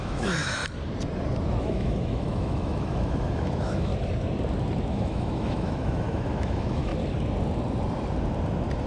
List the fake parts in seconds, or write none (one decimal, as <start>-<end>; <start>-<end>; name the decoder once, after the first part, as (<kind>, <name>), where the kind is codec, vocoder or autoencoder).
0.0-0.6 (autoencoder, DAC-VAE); 1.6-3.9; 4.9-6.9